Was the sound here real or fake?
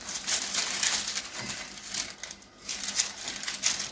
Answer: real